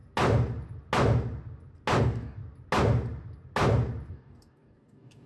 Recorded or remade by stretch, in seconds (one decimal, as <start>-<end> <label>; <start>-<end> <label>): 0.0-2.0 recorded; 2.0-2.4 remade; 2.4-4.1 recorded; 4.1-5.3 remade